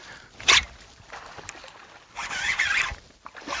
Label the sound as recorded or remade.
recorded